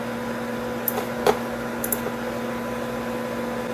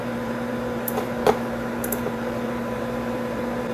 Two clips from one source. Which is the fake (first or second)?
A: second